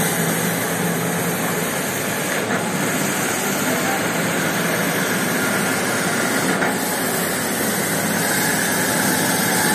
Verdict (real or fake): real